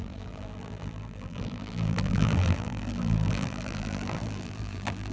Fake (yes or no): yes